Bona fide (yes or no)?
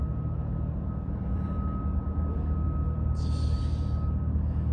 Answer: yes